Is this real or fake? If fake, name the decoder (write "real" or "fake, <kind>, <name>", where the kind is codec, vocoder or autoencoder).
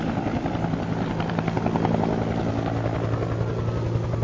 real